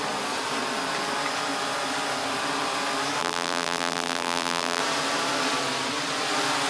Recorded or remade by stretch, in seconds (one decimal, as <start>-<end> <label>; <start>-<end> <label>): 0.0-3.2 recorded; 3.2-4.8 remade; 4.8-6.7 recorded

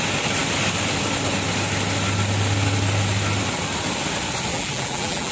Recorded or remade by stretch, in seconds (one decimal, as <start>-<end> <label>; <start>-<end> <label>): 0.0-4.5 recorded; 4.5-5.3 remade

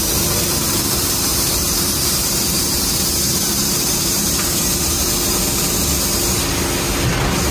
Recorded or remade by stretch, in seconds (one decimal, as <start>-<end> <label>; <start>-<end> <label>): 0.0-1.3 recorded; 1.3-5.1 remade; 5.1-7.5 recorded

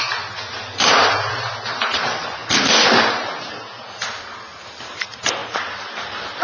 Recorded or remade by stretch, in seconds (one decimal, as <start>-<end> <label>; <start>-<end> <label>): 0.0-6.4 recorded

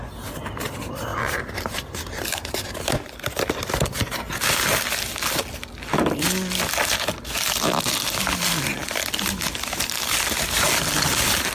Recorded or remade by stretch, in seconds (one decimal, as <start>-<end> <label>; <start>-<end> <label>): 0.0-1.1 recorded; 1.1-4.3 remade; 4.3-11.5 recorded

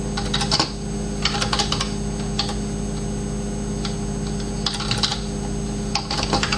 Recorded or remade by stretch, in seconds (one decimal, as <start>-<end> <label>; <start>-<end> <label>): 0.0-6.6 recorded